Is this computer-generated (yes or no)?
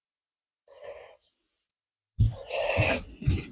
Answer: no